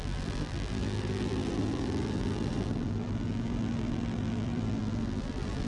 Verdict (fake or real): fake